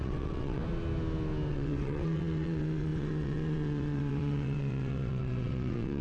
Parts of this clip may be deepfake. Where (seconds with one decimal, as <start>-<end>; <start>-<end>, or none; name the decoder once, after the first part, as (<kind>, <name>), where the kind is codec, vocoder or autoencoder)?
0.0-0.6 (vocoder, WaveNeXt); 1.5-6.0